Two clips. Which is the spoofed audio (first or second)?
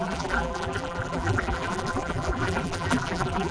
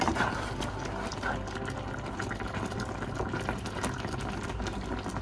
first